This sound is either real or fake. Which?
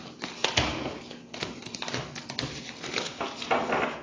real